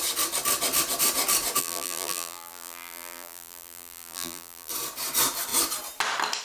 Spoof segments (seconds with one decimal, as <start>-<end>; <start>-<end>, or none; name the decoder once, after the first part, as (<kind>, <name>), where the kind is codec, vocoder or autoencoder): 1.6-4.7 (vocoder, BigVGAN v2)